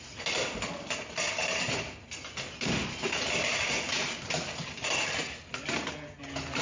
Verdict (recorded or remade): recorded